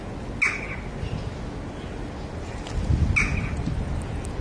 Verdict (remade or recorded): recorded